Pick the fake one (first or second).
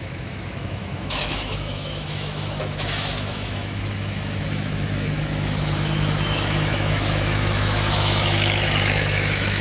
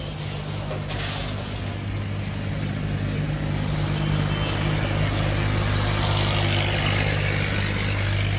first